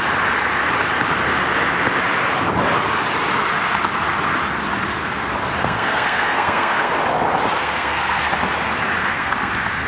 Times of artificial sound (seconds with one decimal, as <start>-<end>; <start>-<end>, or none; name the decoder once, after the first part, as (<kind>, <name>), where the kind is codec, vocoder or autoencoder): 5.6-6.9 (codec, SNAC); 7.6-8.3; 9.0-9.5